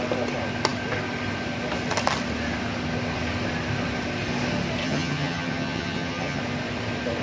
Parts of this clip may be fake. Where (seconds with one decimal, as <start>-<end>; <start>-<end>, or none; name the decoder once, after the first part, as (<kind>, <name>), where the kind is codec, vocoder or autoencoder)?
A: 4.8-6.4 (vocoder, HiFi-GAN)